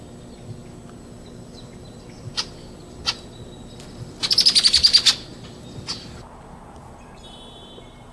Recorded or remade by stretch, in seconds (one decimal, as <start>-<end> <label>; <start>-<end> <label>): 0.0-8.1 recorded